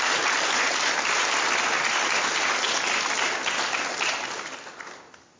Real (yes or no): yes